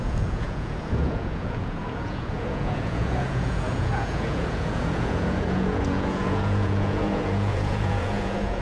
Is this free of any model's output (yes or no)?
no